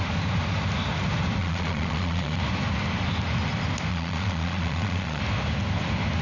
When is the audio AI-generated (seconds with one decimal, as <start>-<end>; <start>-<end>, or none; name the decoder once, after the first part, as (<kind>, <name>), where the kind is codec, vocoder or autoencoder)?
1.4-2.4 (vocoder, Vocos); 3.9-5.2